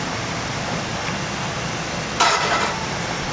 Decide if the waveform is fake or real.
real